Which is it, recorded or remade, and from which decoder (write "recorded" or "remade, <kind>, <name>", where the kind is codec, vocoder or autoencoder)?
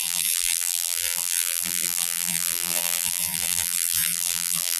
remade, vocoder, BigVGAN v2